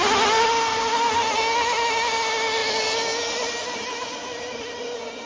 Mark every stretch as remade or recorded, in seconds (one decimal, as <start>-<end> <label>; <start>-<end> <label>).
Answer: 0.0-5.3 recorded